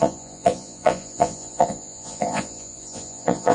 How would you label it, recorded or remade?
remade